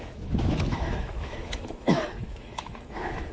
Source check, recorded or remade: remade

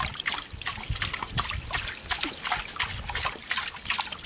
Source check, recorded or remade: recorded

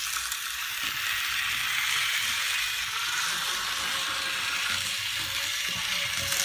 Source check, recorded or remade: recorded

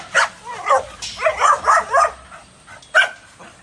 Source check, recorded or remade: recorded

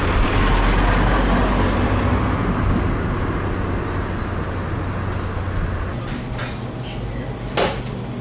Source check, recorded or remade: recorded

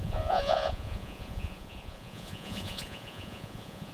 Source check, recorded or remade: remade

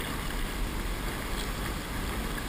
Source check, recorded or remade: recorded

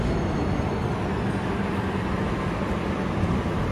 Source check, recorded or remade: recorded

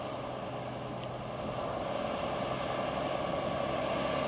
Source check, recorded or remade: recorded